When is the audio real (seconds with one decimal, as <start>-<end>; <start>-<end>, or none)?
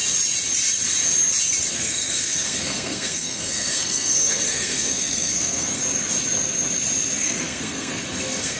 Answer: 0.0-1.7; 5.8-7.2